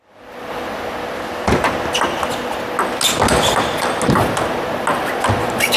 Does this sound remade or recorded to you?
recorded